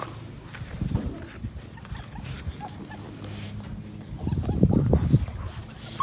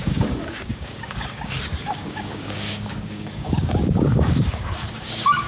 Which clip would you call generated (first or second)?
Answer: second